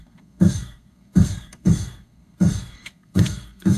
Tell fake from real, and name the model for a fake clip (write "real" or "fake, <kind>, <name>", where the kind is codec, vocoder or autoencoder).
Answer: fake, codec, SNAC